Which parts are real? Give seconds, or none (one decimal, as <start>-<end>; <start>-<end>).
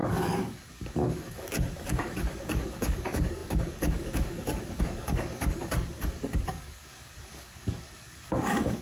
none